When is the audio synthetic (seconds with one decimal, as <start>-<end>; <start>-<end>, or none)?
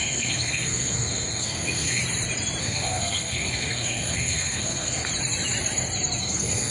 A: 0.0-2.0; 2.6-5.1; 6.2-6.7